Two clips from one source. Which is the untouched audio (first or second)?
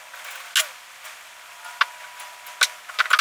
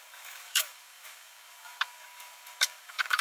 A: first